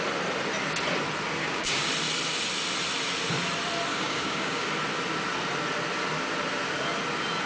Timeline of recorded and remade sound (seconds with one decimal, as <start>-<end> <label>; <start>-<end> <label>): 0.0-1.4 recorded; 1.4-1.9 remade; 1.9-3.9 recorded; 3.9-4.7 remade; 4.7-7.5 recorded